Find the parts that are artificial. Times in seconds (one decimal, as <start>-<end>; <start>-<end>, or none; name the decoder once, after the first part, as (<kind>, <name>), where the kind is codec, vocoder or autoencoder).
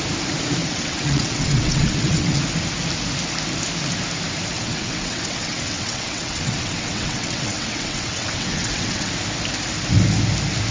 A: 0.6-2.4 (vocoder, WaveNeXt); 4.5-9.1